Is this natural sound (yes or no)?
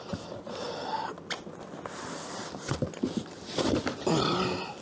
yes